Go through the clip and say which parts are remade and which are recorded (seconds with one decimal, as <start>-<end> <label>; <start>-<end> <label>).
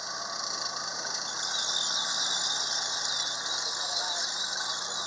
0.0-5.1 recorded